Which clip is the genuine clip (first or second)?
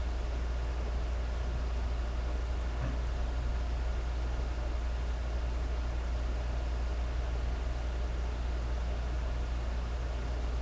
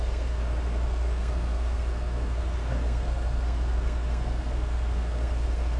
first